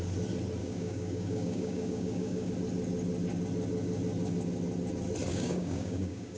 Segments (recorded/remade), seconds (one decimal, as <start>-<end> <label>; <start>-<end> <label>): 0.0-0.6 recorded; 0.6-2.5 remade; 2.5-5.3 recorded; 5.3-6.4 remade

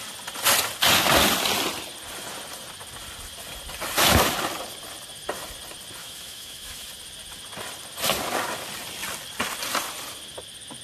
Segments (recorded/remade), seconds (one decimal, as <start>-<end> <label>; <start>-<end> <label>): 0.0-6.0 recorded; 6.0-6.9 remade; 6.9-10.8 recorded